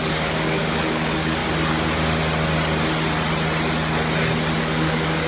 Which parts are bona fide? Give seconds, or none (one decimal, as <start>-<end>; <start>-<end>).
1.4-4.6